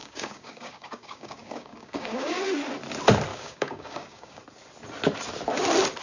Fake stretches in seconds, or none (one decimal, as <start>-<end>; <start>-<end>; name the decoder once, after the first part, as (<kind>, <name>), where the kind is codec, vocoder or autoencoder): 0.0-2.4 (codec, DAC); 3.3-4.4